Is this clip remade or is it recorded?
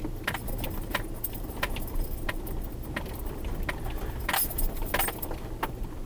remade